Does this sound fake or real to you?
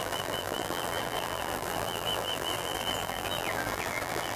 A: fake